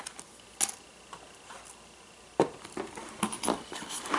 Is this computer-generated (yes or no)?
no